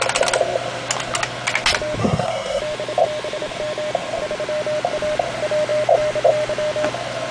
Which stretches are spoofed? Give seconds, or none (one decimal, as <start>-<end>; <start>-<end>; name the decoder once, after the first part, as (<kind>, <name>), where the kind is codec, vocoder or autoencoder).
2.0-2.6 (codec, SNAC)